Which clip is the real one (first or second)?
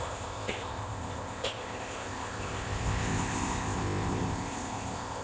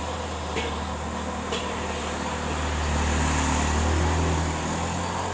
second